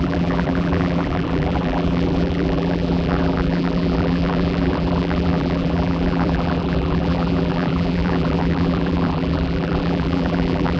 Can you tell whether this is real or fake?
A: fake